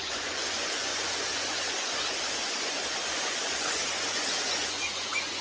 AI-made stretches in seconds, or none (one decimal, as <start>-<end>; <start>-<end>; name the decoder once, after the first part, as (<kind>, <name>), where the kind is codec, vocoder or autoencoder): 0.0-5.4 (vocoder, Vocos)